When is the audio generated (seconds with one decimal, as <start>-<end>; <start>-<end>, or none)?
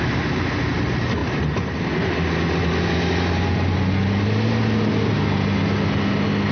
none